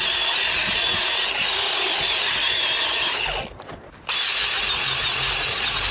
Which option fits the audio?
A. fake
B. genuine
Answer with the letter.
B